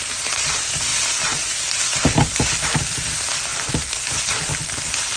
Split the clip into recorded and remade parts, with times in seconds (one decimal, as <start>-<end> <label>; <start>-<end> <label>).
0.0-0.9 remade; 0.9-2.8 recorded; 2.8-4.5 remade; 4.5-5.2 recorded